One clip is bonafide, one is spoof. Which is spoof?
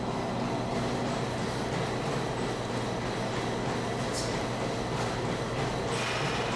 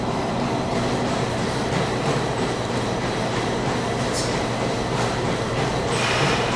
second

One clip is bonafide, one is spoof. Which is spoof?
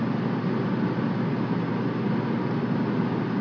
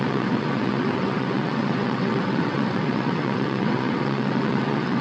second